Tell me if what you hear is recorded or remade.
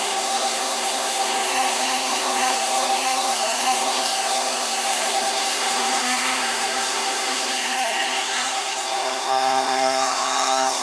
remade